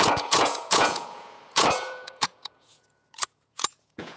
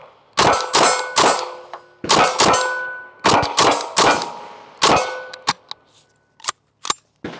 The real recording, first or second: second